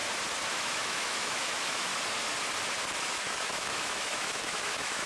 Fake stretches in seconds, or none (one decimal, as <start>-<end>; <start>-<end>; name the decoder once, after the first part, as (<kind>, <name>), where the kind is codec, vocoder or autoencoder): 0.5-1.9 (autoencoder, DAC-VAE); 3.0-5.1